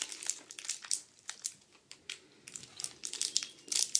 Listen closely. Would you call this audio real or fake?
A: real